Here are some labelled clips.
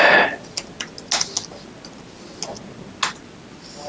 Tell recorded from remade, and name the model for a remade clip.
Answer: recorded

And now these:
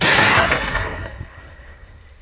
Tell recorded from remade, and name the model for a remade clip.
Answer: remade, codec, SNAC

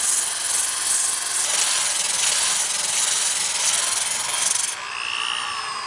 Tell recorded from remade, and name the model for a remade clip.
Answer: recorded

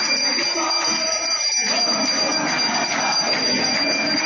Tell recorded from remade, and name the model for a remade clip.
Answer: recorded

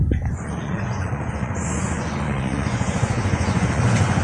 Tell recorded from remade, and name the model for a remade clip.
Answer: remade, vocoder, Vocos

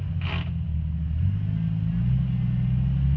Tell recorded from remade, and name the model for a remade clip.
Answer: recorded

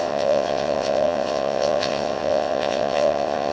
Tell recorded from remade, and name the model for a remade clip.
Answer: remade, vocoder, WaveNeXt